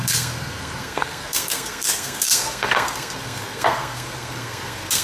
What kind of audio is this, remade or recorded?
remade